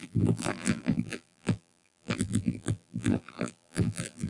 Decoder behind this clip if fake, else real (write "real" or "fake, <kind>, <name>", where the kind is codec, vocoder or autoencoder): fake, vocoder, BigVGAN v2